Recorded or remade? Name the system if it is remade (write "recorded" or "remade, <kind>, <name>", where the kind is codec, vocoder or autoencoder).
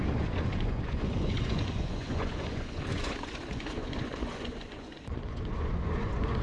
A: remade, vocoder, Vocos